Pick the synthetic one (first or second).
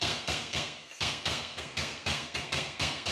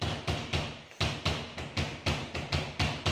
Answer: first